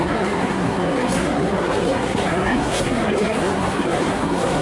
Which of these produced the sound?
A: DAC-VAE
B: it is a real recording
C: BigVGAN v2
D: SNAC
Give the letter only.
D